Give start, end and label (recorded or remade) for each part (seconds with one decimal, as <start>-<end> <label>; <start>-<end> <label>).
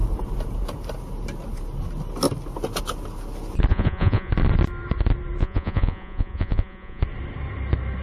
0.0-3.7 recorded; 3.7-4.3 remade; 4.3-5.4 recorded; 5.4-7.0 remade; 7.0-8.0 recorded